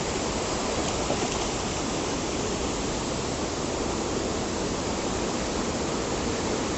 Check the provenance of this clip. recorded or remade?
recorded